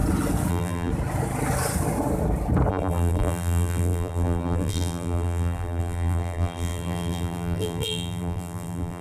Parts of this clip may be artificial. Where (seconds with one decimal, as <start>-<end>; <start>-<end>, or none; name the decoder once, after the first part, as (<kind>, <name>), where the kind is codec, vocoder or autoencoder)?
0.5-0.9 (vocoder, BigVGAN v2); 2.7-9.0